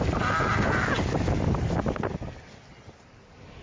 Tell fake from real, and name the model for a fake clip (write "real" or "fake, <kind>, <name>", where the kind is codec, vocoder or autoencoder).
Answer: real